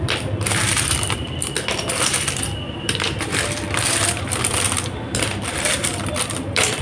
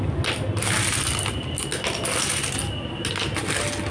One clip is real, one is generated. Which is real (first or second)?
second